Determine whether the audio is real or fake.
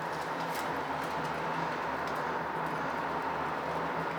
real